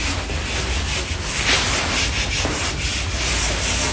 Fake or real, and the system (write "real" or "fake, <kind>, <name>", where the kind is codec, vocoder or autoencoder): real